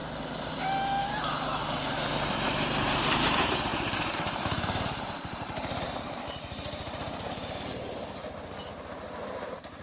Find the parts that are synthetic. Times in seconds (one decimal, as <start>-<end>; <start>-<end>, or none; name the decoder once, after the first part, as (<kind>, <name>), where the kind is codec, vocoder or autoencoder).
1.0-1.6 (vocoder, BigVGAN v2); 2.3-9.8